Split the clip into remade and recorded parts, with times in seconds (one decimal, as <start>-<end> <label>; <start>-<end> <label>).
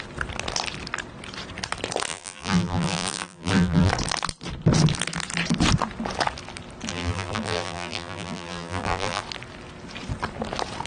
0.0-2.1 recorded; 2.1-3.9 remade; 3.9-6.9 recorded; 6.9-9.2 remade; 9.2-10.9 recorded